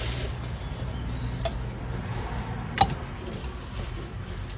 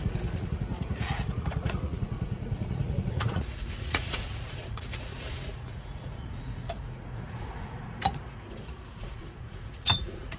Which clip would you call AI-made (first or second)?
second